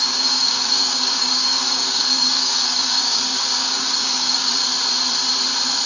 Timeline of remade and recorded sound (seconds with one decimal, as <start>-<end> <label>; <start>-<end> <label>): 0.0-4.6 remade; 4.6-5.9 recorded

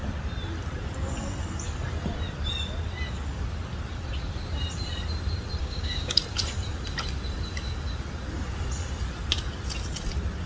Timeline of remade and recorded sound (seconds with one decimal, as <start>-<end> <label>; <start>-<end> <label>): 0.0-5.6 recorded; 5.6-6.2 remade; 6.2-10.5 recorded

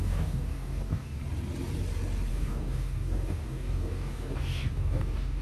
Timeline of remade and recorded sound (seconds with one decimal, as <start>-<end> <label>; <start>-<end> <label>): 0.0-1.2 remade; 1.2-2.3 recorded; 2.3-5.4 remade

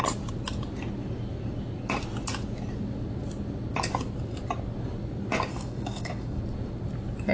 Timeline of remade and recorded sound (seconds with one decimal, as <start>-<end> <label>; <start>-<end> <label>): 0.0-5.5 recorded; 5.5-6.4 remade; 6.4-7.3 recorded

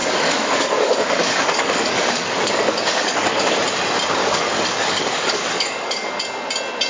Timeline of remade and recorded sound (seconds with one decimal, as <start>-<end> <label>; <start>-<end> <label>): 0.0-3.5 remade; 3.5-4.2 recorded; 4.2-6.2 remade; 6.2-6.9 recorded

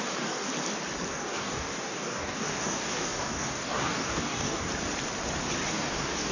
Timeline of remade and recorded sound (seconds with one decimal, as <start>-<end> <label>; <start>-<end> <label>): 0.0-0.5 remade; 0.5-1.1 recorded; 1.1-4.7 remade; 4.7-5.7 recorded; 5.7-6.3 remade